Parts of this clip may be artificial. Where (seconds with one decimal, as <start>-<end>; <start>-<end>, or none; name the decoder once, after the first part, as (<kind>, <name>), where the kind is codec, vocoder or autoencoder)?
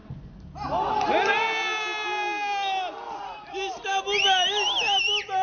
none